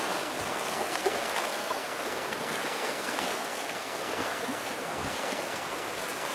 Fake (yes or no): yes